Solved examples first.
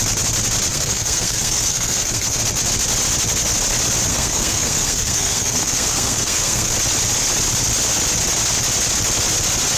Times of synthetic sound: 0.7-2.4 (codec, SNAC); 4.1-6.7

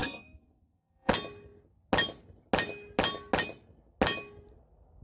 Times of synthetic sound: 0.0-1.1 (codec, SNAC)

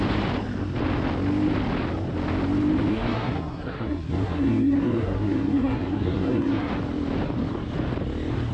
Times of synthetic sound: 2.9-6.7 (codec, SNAC)

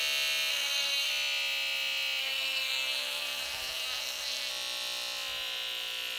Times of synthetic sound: 0.5-1.1 (codec, SNAC); 2.2-4.5

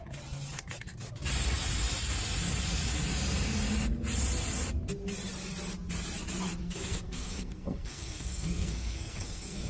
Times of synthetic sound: 6.6-9.7 (codec, SNAC)

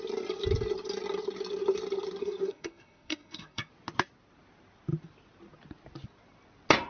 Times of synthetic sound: 2.2-3.7 (codec, SNAC)

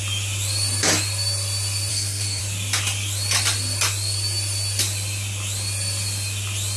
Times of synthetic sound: 1.9-2.4 (codec, SNAC)